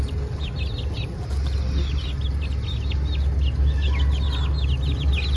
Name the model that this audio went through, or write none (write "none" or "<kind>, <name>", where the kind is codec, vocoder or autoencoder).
none